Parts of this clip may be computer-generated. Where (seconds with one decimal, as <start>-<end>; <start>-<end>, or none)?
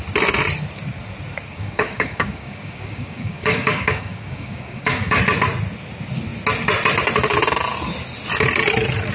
1.5-5.2